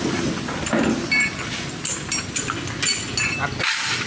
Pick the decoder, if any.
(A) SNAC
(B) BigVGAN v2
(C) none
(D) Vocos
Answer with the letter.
C